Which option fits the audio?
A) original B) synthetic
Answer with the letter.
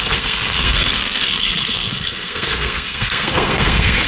B